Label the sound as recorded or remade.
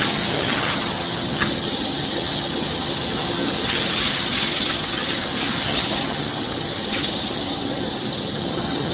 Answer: remade